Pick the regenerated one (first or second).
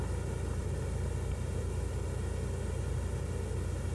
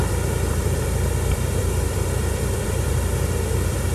second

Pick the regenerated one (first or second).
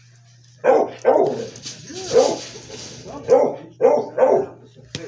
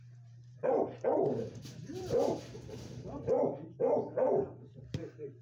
second